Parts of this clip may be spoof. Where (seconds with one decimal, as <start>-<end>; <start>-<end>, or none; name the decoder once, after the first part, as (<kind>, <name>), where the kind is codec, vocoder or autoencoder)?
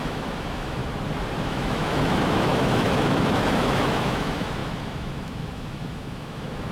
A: 0.0-0.8 (autoencoder, DAC-VAE); 1.4-6.7